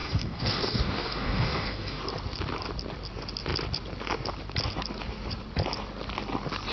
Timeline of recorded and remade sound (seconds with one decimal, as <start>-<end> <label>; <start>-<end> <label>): 0.0-2.0 remade; 2.0-6.7 recorded